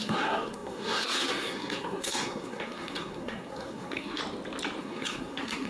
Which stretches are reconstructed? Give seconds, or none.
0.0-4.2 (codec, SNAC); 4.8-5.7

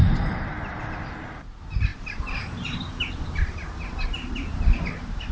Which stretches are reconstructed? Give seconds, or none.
0.0-0.8 (vocoder, BigVGAN v2); 1.9-5.3

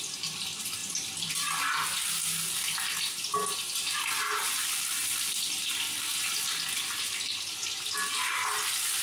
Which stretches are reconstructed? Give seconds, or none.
0.8-1.3 (vocoder, BigVGAN v2); 5.0-5.7

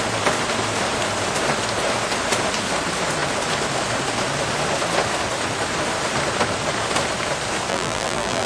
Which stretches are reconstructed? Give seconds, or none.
7.7-8.5 (vocoder, BigVGAN v2)

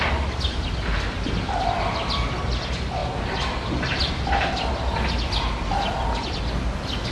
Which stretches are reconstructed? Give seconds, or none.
none

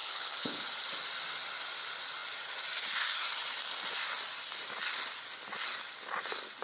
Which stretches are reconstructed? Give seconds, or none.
0.0-0.6 (codec, HILCodec)

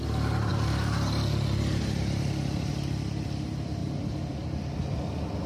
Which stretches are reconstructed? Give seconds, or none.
0.5-2.7 (vocoder, BigVGAN v2)

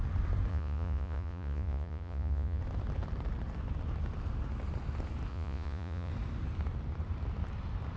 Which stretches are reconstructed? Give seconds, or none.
0.5-2.6 (vocoder, Vocos); 5.3-6.1